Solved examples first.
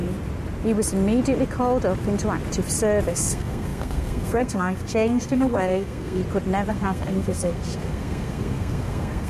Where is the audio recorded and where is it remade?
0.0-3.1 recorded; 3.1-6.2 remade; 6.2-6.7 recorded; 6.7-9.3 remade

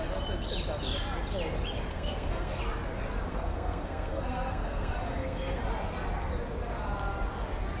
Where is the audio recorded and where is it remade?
0.0-1.9 recorded; 1.9-2.6 remade; 2.6-3.3 recorded; 3.3-5.6 remade; 5.6-7.8 recorded